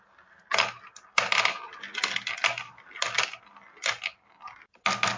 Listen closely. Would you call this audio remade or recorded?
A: recorded